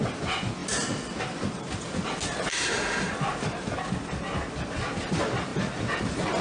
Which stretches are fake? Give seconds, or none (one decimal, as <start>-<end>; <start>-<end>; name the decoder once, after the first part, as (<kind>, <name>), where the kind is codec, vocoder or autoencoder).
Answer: 2.5-3.1 (autoencoder, DAC-VAE)